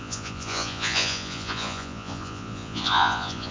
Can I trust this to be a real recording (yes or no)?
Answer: no